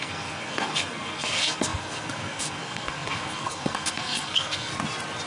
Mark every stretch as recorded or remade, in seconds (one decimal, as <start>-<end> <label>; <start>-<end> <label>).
0.0-4.7 remade; 4.7-5.3 recorded